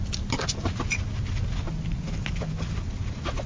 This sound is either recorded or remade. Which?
recorded